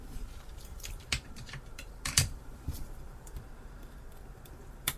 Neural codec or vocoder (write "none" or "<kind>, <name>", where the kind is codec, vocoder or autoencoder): vocoder, BigVGAN v2